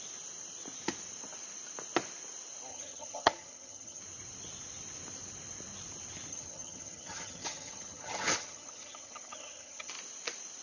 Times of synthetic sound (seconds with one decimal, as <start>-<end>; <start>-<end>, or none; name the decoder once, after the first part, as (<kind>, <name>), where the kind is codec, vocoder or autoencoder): 2.7-4.0 (vocoder, HiFi-GAN); 6.3-9.9